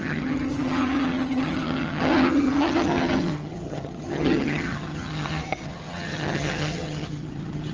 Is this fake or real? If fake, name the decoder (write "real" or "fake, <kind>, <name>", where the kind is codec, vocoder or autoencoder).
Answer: fake, vocoder, HiFi-GAN